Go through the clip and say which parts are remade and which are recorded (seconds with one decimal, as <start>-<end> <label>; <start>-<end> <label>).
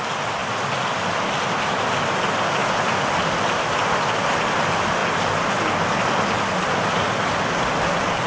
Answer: 0.0-8.3 recorded